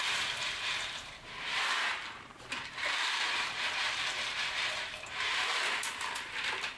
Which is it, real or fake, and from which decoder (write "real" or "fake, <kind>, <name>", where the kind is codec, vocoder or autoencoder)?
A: fake, vocoder, BigVGAN v2